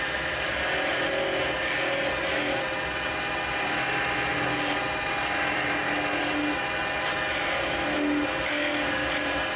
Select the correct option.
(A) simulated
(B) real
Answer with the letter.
B